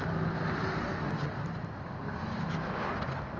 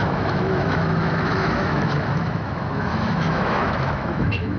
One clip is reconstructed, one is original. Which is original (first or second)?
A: first